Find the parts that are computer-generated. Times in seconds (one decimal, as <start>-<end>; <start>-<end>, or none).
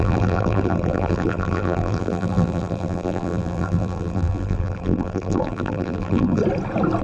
0.0-6.4